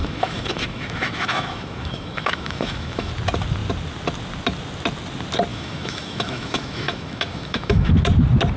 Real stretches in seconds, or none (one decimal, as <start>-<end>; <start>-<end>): 3.1-5.5; 7.9-8.6